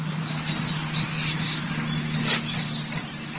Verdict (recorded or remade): recorded